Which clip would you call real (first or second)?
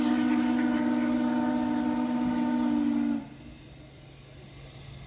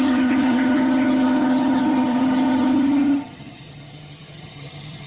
first